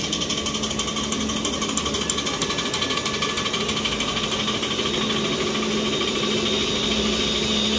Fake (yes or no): no